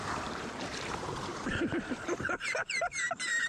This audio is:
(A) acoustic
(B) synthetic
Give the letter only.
B